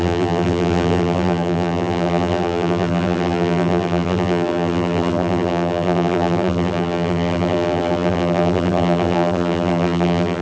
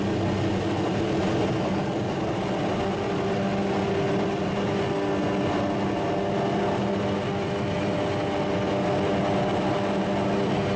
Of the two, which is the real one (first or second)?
second